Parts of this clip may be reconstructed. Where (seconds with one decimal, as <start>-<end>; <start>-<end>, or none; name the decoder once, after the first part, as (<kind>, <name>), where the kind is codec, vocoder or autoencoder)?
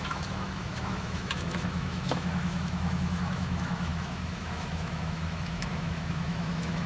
0.0-6.9 (autoencoder, DAC-VAE)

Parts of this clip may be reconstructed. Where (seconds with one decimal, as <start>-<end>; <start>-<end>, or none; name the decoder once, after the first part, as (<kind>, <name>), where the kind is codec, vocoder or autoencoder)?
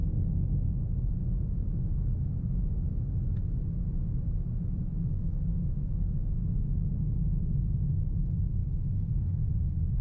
1.6-2.3 (autoencoder, DAC-VAE); 4.9-6.3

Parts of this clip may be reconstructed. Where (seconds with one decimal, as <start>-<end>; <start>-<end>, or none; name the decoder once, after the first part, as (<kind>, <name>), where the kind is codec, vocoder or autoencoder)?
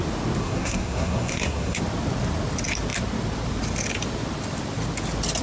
0.4-1.8 (codec, SNAC)